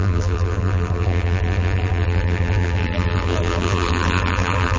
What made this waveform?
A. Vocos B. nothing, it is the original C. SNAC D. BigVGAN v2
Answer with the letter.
D